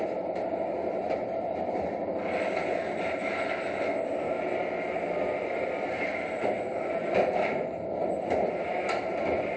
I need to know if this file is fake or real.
real